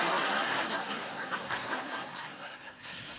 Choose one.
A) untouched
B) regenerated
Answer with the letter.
B